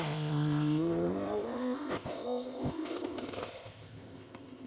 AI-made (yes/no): yes